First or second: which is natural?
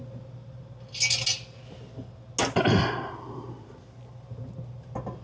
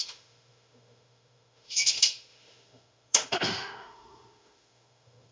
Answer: first